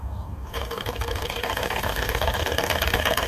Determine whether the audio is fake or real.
fake